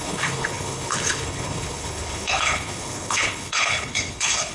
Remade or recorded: remade